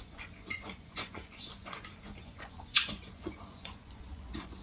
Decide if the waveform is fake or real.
fake